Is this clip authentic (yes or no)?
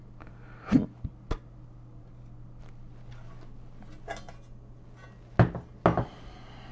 yes